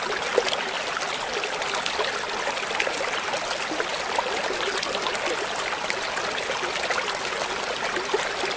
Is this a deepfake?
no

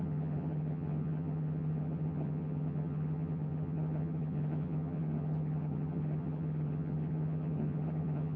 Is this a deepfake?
yes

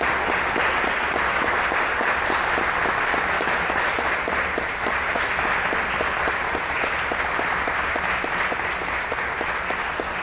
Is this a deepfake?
no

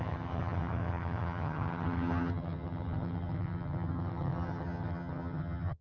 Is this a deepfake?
yes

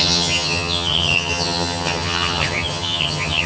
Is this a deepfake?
yes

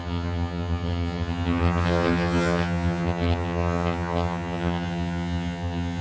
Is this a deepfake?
yes